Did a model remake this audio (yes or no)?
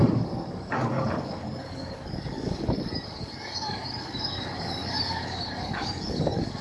yes